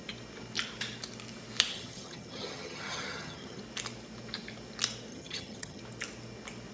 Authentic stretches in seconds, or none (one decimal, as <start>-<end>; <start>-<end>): 0.0-1.7; 3.6-5.1; 5.8-6.7